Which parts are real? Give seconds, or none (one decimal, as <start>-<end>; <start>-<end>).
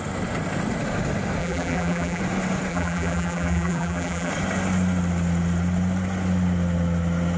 0.0-1.4; 2.2-2.7; 4.3-7.4